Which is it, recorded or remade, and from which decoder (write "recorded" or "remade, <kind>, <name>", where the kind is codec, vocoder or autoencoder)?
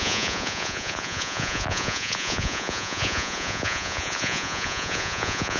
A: remade, vocoder, Vocos